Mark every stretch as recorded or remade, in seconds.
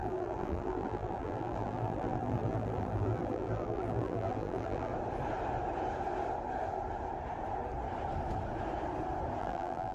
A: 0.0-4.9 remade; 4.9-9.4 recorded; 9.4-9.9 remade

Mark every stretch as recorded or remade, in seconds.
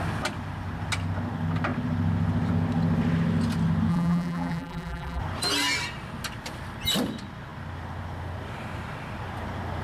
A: 0.0-3.9 recorded; 3.9-5.2 remade; 5.2-9.8 recorded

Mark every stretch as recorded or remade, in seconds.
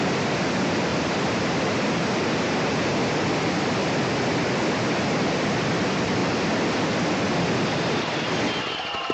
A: 0.0-9.1 recorded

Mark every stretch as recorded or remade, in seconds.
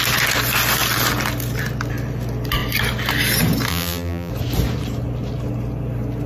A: 0.0-3.7 recorded; 3.7-4.3 remade; 4.3-6.3 recorded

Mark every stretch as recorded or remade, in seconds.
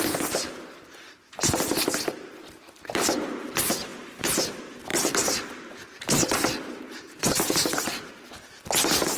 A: 0.0-4.9 recorded; 4.9-8.1 remade; 8.1-9.2 recorded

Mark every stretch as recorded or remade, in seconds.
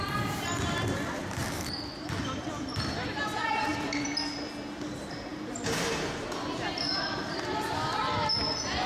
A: 0.0-1.4 recorded; 1.4-4.1 remade; 4.1-5.3 recorded; 5.3-7.4 remade; 7.4-8.9 recorded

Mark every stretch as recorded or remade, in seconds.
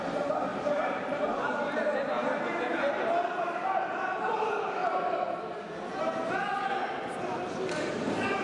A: 0.0-0.5 recorded; 0.5-1.8 remade; 1.8-8.4 recorded